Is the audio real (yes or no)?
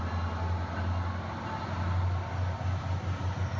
yes